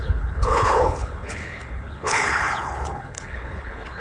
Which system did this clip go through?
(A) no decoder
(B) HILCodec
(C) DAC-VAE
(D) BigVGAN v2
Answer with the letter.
B